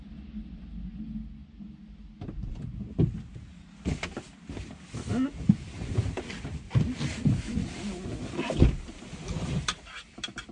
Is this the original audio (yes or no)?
yes